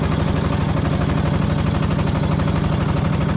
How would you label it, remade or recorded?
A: recorded